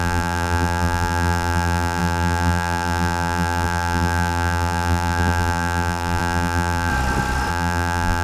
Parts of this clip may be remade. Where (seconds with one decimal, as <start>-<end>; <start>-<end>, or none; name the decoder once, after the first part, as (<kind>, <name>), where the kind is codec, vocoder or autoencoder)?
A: 0.0-6.9 (vocoder, BigVGAN v2); 7.5-8.2